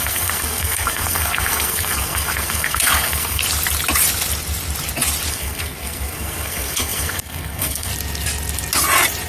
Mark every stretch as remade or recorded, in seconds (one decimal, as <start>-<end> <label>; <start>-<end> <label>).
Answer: 0.0-3.4 remade; 3.4-5.3 recorded; 5.3-7.9 remade; 7.9-9.3 recorded